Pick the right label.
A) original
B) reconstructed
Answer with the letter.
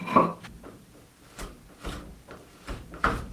A